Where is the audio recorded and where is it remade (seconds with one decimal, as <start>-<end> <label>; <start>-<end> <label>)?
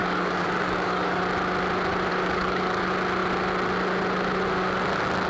0.0-1.2 remade; 1.2-2.1 recorded; 2.1-2.8 remade; 2.8-5.3 recorded